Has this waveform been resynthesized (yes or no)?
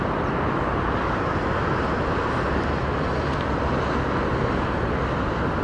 no